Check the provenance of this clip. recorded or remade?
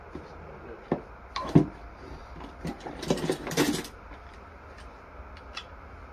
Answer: recorded